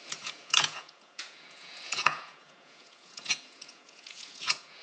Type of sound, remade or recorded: remade